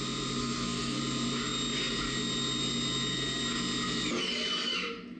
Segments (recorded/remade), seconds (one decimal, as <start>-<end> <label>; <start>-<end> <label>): 0.0-0.4 recorded; 0.4-1.0 remade; 1.0-5.2 recorded